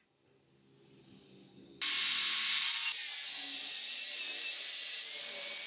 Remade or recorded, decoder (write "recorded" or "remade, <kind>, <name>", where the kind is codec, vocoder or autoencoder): recorded